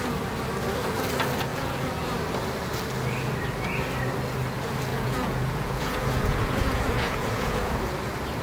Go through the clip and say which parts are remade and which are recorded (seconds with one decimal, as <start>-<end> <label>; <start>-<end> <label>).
0.0-1.5 recorded; 1.5-2.1 remade; 2.1-4.9 recorded; 4.9-7.8 remade; 7.8-8.4 recorded